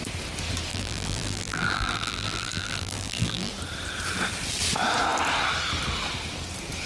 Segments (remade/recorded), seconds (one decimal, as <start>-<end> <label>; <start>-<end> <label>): 0.0-0.7 recorded; 0.7-3.5 remade; 3.5-6.9 recorded